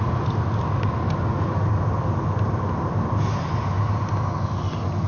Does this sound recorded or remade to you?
recorded